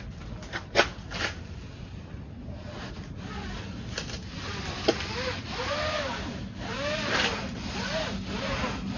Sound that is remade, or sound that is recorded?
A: recorded